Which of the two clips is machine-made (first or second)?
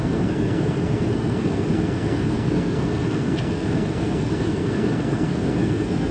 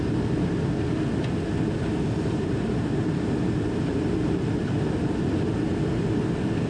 first